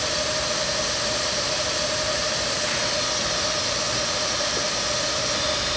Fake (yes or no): no